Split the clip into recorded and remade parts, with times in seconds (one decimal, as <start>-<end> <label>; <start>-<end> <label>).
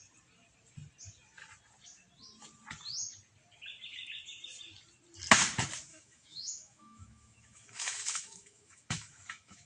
0.0-5.9 recorded; 5.9-9.7 remade